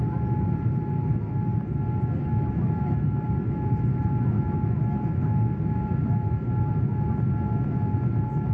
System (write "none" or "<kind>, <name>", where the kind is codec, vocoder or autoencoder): none